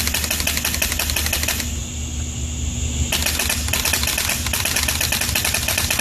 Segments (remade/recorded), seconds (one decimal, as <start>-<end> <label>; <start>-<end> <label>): 0.0-6.0 recorded